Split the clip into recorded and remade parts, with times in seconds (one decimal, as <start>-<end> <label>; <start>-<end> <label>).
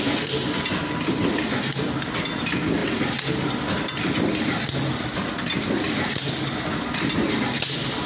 0.0-8.1 recorded